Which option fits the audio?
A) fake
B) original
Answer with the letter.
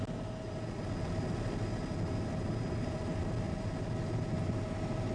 B